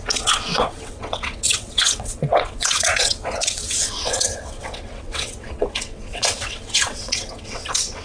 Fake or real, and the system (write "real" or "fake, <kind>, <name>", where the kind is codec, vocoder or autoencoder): fake, vocoder, WaveNeXt